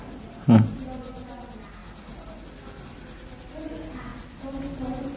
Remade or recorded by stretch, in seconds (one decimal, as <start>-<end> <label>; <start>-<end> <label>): 0.0-5.2 recorded